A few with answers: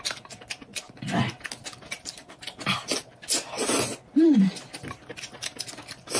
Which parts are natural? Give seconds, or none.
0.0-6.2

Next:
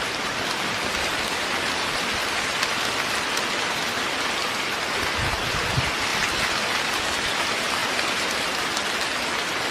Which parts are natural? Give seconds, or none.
6.1-7.0

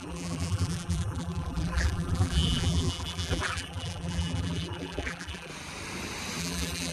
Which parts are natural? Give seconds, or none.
5.5-6.4

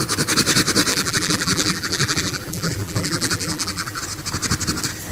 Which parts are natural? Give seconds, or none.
0.0-0.9; 4.0-5.1

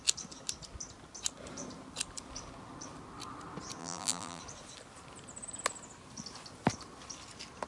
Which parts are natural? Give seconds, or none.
0.0-3.8; 4.4-7.7